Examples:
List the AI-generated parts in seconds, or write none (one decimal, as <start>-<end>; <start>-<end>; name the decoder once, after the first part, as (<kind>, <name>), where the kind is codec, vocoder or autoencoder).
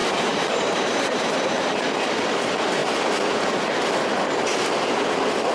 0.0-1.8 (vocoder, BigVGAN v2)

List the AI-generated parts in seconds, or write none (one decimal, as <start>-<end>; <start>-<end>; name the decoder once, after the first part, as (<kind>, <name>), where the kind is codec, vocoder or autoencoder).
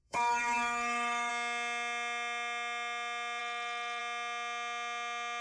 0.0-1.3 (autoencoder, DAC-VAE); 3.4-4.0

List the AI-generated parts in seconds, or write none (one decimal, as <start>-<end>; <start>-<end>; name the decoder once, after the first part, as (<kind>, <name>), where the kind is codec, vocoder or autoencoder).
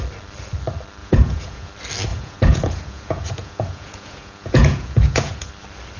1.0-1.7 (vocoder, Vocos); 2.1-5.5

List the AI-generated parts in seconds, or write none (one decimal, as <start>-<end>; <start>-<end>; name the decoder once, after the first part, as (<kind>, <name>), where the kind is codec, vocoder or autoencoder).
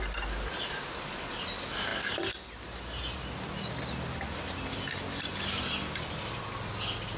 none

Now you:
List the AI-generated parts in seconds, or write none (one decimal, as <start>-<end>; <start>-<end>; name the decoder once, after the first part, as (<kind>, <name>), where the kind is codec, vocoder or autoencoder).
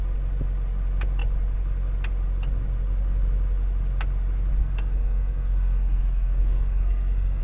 4.6-7.4 (codec, SNAC)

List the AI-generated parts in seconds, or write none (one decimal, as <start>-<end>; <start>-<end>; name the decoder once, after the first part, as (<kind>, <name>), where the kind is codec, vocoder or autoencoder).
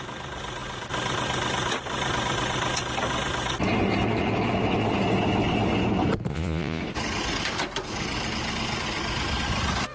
6.3-6.8 (vocoder, Vocos)